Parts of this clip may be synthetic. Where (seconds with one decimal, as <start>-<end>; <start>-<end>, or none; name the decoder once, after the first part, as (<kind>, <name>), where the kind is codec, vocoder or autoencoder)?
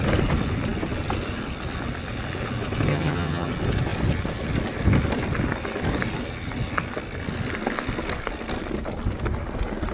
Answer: 2.9-3.5 (vocoder, HiFi-GAN)